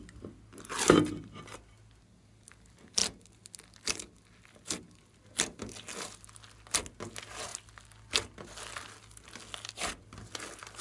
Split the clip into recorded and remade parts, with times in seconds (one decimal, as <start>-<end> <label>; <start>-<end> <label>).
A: 0.0-10.8 recorded